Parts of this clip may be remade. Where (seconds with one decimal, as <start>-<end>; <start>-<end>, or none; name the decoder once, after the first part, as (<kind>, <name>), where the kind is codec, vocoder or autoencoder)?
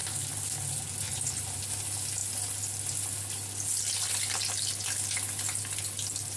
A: none